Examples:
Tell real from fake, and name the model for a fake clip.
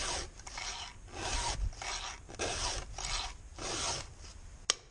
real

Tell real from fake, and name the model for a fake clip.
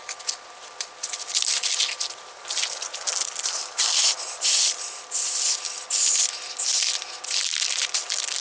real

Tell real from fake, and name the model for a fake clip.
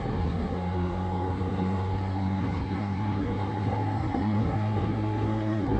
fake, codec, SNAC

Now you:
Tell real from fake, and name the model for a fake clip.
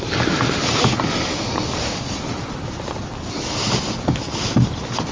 real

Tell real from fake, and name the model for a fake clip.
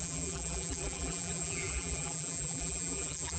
fake, vocoder, BigVGAN v2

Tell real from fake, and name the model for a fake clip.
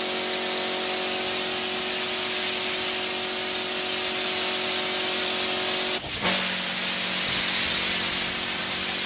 real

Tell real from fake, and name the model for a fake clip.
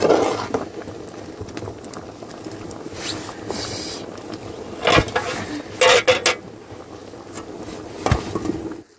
real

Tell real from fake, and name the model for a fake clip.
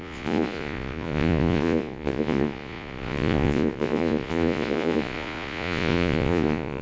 fake, vocoder, Vocos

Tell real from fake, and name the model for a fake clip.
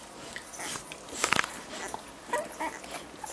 real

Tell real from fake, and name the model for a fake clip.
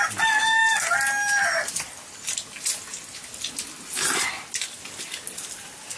real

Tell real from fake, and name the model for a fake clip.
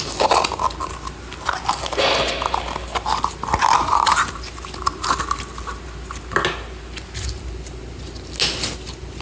real